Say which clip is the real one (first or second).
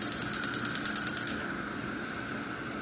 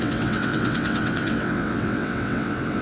first